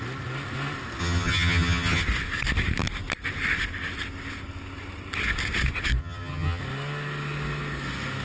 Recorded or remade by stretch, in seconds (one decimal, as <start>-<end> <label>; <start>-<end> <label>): 0.0-1.0 recorded; 1.0-2.0 remade; 2.0-6.0 recorded; 6.0-6.6 remade; 6.6-8.2 recorded